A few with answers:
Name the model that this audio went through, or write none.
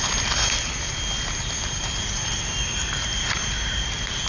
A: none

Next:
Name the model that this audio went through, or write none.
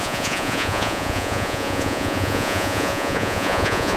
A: vocoder, Vocos